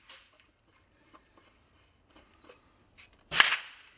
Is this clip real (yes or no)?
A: no